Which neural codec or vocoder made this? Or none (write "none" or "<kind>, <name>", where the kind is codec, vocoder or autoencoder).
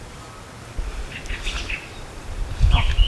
none